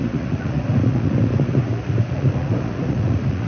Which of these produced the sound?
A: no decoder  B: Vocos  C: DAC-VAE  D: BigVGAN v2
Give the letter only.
B